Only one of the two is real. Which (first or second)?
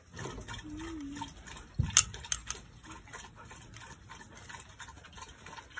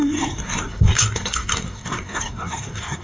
first